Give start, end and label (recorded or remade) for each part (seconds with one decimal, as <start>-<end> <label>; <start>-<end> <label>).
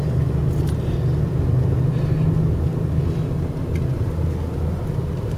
0.0-5.4 recorded